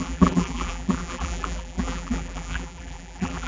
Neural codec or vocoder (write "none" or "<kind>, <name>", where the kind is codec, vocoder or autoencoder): vocoder, BigVGAN v2